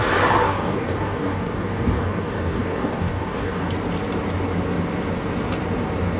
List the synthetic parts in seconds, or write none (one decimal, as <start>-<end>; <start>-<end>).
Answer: 0.4-3.7